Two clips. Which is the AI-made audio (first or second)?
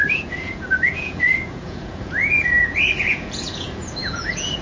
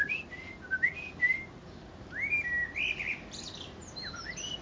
first